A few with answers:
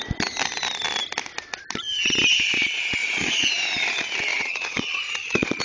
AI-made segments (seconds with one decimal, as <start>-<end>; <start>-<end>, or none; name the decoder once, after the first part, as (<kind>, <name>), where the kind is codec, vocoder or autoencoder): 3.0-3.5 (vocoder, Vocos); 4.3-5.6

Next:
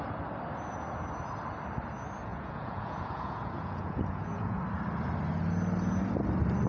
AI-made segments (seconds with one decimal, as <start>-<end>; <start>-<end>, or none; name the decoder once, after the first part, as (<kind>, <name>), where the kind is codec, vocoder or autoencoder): 2.3-4.6 (vocoder, Vocos)

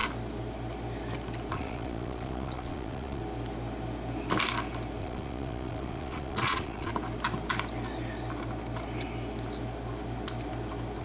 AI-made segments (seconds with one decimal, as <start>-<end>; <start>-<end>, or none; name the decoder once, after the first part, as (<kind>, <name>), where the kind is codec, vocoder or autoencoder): 1.5-3.2 (vocoder, Vocos); 5.0-6.9

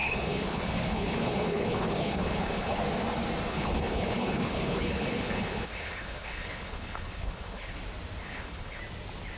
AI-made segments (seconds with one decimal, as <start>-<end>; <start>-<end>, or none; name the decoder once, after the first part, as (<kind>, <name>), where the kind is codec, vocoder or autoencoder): 0.0-2.8 (codec, HILCodec); 3.5-7.7; 8.2-8.8

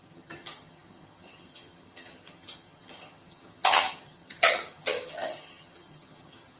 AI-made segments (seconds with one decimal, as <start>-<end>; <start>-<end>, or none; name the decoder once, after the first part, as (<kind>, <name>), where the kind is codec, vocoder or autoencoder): 0.0-6.6 (vocoder, HiFi-GAN)